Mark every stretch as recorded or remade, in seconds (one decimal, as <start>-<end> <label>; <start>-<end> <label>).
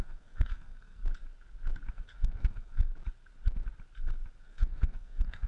0.0-1.0 remade; 1.0-1.9 recorded; 1.9-2.9 remade; 2.9-4.4 recorded; 4.4-5.5 remade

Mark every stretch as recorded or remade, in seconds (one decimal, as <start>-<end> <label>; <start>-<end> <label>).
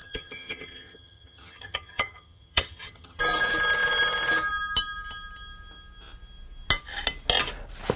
0.0-3.2 remade; 3.2-8.0 recorded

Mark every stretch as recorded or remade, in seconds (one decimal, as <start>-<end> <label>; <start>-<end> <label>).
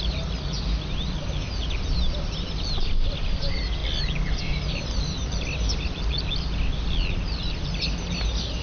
0.0-8.6 recorded